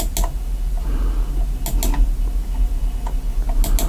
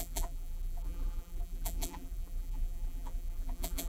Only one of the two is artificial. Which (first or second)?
second